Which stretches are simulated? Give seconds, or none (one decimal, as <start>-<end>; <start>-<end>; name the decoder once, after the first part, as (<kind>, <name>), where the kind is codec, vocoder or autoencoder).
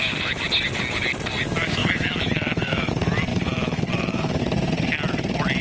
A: 1.8-2.9 (autoencoder, DAC-VAE); 3.3-4.4